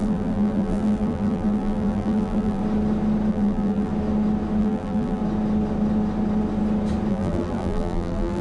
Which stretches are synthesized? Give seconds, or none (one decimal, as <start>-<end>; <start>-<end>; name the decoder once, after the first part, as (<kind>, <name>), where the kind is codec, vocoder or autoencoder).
0.0-2.6 (vocoder, BigVGAN v2); 3.3-3.9; 4.6-5.2; 7.1-8.4